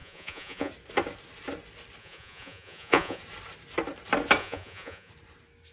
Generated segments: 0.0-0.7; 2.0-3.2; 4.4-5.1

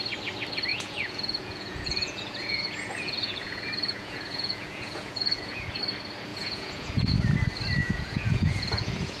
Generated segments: 0.7-5.8; 6.3-7.1; 7.8-9.2

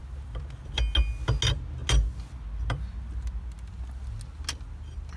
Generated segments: none

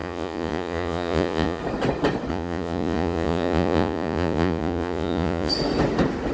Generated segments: 0.0-1.6; 2.3-5.5

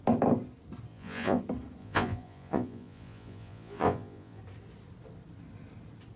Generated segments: 0.9-1.4; 1.8-4.4

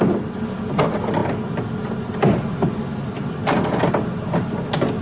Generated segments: none